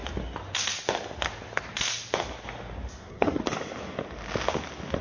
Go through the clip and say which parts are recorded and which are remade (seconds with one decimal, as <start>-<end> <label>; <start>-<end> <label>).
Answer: 0.0-3.0 recorded; 3.0-3.4 remade; 3.4-5.0 recorded